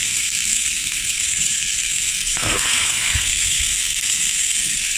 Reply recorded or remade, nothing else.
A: remade